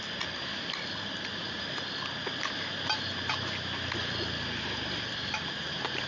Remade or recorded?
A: recorded